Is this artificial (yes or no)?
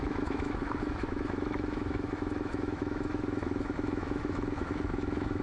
yes